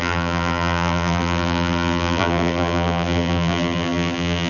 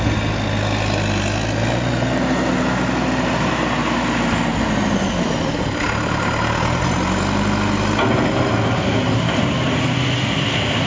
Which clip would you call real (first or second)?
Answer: second